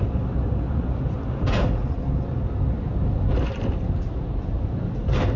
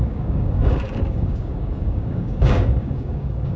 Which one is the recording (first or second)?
first